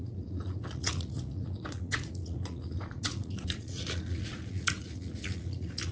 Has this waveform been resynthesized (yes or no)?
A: yes